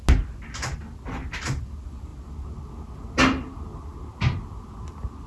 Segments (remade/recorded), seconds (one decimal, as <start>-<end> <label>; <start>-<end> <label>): 0.0-5.3 recorded